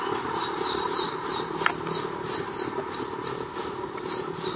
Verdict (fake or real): real